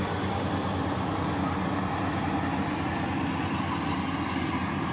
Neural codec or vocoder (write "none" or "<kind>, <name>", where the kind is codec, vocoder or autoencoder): none